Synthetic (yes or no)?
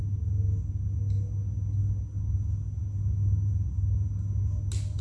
no